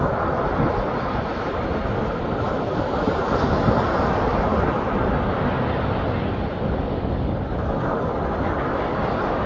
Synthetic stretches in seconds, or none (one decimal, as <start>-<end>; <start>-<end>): none